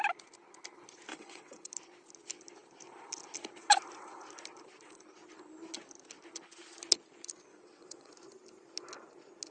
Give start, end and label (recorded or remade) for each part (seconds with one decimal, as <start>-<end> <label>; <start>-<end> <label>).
0.0-1.1 recorded; 1.1-1.7 remade; 1.7-7.5 recorded; 7.5-8.1 remade; 8.1-9.5 recorded